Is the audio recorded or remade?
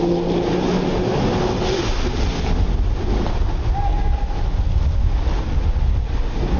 recorded